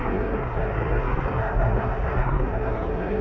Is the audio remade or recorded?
remade